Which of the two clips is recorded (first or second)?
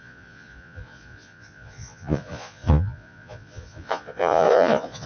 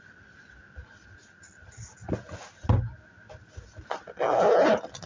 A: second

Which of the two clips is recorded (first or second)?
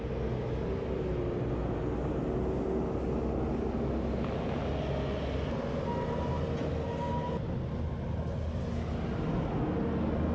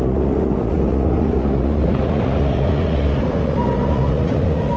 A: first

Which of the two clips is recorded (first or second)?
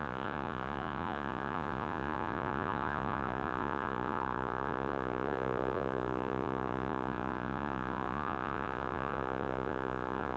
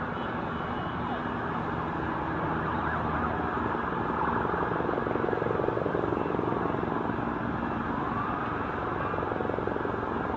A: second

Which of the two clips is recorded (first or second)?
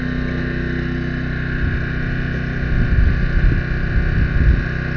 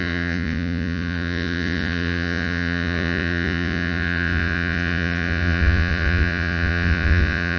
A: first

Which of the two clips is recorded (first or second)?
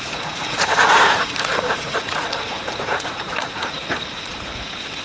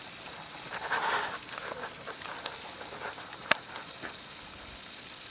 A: second